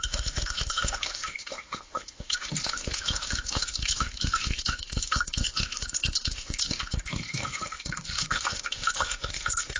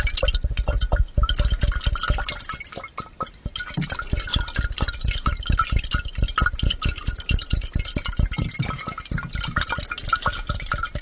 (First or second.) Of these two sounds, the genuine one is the second